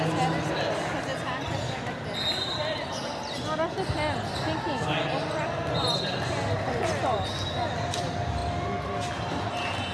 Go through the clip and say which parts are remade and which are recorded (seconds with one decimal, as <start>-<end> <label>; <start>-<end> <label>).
0.0-9.9 recorded